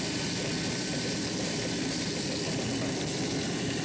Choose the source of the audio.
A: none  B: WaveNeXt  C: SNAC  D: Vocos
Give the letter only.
A